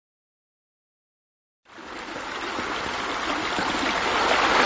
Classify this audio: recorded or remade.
recorded